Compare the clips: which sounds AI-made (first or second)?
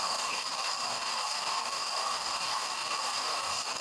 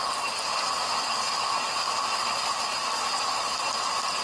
first